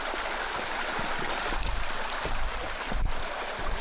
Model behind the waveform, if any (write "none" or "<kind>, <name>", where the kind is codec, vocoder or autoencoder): none